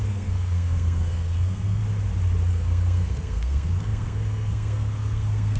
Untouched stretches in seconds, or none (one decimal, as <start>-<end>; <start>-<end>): 1.8-2.5